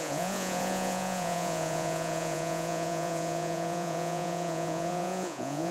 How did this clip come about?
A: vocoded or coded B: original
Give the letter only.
A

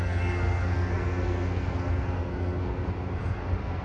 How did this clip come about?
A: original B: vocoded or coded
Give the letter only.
B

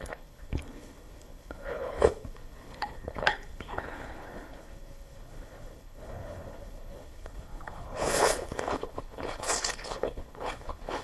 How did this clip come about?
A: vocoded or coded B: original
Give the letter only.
A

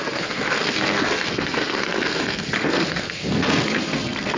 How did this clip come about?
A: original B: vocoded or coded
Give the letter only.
B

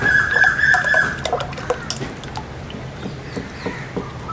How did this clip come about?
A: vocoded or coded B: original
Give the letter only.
B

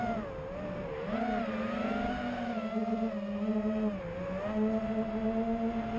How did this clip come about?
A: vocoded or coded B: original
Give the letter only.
B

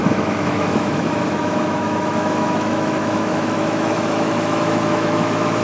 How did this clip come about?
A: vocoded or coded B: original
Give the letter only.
A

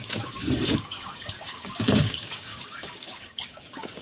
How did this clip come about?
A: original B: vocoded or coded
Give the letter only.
B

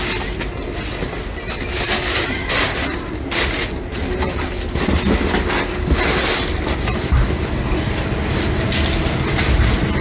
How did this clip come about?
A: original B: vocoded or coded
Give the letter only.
A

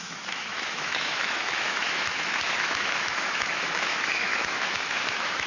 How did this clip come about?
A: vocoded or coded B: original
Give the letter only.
A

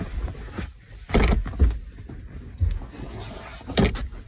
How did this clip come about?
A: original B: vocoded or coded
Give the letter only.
A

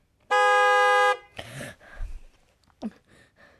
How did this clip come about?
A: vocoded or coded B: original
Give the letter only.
B